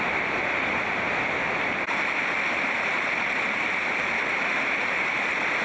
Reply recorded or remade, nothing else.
recorded